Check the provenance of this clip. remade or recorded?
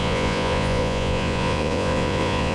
remade